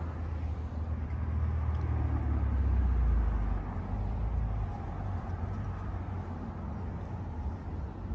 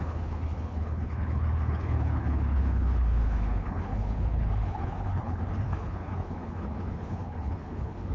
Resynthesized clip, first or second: second